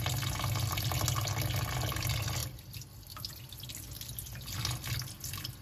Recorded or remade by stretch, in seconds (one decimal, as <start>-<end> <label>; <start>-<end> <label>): 0.0-5.6 recorded